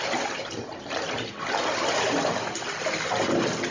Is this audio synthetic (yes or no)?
no